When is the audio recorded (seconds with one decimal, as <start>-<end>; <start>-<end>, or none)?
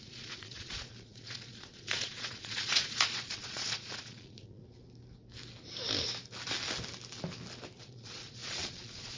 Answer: 4.6-7.8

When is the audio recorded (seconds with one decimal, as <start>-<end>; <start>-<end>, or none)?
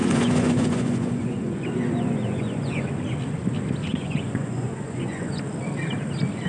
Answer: 2.9-3.8; 5.4-6.5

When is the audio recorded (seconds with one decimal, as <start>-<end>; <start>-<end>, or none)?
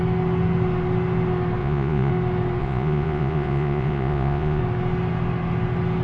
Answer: 0.0-1.6; 2.1-2.6; 4.6-6.0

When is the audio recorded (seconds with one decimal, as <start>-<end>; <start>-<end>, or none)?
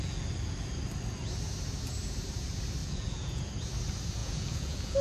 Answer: 0.0-2.8; 3.5-4.2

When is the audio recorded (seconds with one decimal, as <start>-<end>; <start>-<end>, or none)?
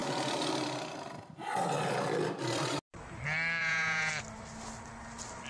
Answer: 0.0-3.6; 4.1-5.5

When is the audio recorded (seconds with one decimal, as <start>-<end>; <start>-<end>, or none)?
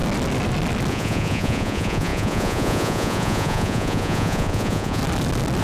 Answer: 0.0-0.9; 5.0-5.6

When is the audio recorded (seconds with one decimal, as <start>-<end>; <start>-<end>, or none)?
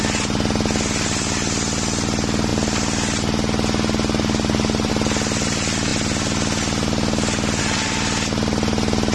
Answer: 0.0-9.1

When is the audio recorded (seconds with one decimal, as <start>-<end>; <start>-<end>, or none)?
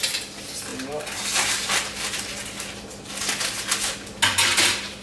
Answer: 0.0-5.0